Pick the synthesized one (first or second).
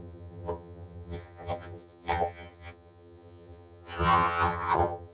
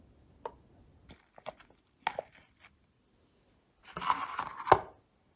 first